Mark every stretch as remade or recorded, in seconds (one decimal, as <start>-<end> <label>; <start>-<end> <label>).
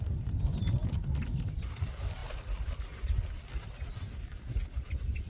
0.0-5.3 recorded